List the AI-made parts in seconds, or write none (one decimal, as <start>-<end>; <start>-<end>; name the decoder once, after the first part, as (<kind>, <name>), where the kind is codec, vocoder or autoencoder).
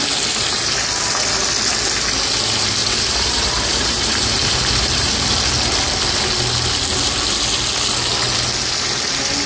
2.8-5.1 (vocoder, BigVGAN v2)